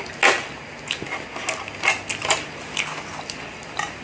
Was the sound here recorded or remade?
recorded